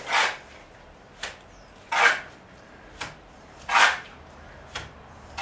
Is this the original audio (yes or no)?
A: yes